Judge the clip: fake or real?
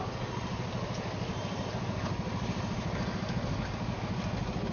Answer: real